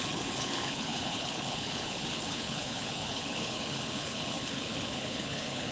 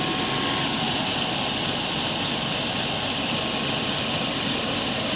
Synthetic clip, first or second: first